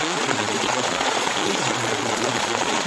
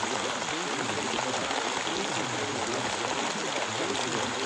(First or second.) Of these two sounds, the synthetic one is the first